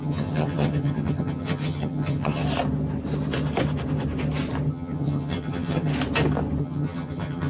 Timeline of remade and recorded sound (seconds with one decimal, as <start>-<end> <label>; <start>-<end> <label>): 0.0-2.4 remade; 2.4-4.7 recorded; 4.7-5.9 remade; 5.9-6.6 recorded; 6.6-7.5 remade